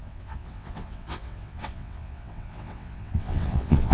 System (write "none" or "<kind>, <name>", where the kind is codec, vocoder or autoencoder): vocoder, WaveNeXt